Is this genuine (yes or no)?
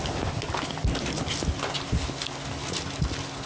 yes